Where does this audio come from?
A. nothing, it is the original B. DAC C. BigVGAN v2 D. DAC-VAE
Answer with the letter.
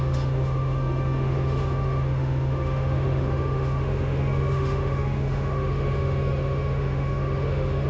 D